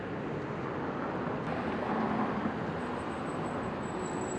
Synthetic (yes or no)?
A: no